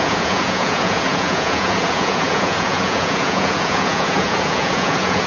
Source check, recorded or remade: remade